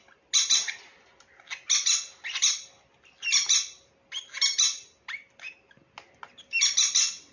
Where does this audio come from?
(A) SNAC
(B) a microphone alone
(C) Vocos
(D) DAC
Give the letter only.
B